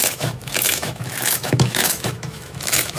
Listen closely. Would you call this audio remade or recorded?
remade